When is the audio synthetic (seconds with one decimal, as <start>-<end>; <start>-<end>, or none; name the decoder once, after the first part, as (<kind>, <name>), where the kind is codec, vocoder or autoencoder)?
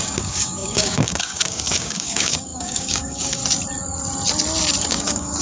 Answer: 0.0-3.4 (codec, DAC); 4.9-5.4